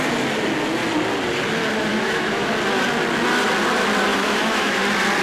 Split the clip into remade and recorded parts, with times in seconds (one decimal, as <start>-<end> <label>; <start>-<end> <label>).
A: 0.0-1.9 recorded; 1.9-2.5 remade; 2.5-4.1 recorded; 4.1-4.8 remade; 4.8-5.2 recorded